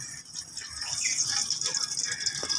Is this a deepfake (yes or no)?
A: no